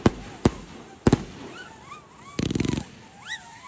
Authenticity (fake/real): real